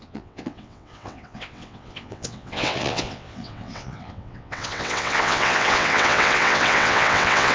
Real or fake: fake